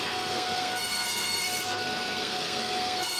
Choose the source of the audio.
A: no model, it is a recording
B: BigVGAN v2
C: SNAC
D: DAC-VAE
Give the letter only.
C